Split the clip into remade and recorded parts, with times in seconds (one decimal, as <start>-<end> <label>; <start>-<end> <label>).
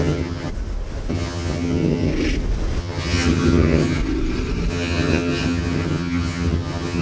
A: 0.0-0.5 remade; 0.5-1.1 recorded; 1.1-2.1 remade; 2.1-2.8 recorded; 2.8-4.0 remade; 4.0-4.7 recorded; 4.7-7.0 remade